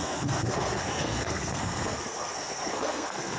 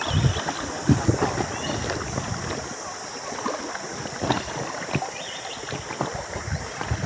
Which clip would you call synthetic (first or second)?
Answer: first